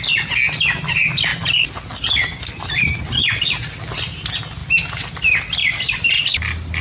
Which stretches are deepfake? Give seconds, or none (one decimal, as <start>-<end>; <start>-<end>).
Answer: 1.3-3.0; 5.6-6.2